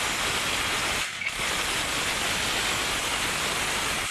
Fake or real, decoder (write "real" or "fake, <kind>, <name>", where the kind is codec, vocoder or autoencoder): real